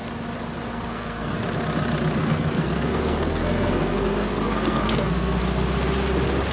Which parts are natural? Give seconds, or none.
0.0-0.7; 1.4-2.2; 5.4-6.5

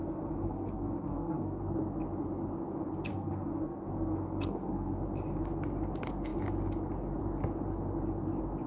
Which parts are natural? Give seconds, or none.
1.6-3.1; 5.0-8.7